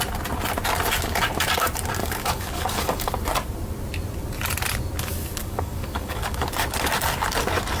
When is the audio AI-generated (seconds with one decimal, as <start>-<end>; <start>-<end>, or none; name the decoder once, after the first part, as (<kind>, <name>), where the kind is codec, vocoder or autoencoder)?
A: 2.0-3.1 (codec, DAC); 5.4-6.5